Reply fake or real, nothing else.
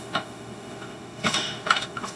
fake